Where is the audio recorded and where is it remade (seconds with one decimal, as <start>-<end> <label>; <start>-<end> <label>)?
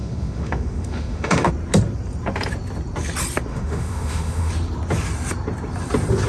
0.0-1.5 remade; 1.5-3.5 recorded; 3.5-4.5 remade; 4.5-6.3 recorded